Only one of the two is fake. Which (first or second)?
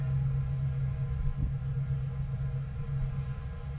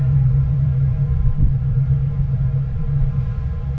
second